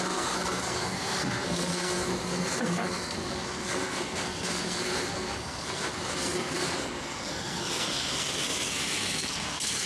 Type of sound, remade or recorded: remade